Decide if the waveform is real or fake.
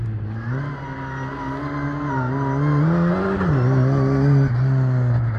real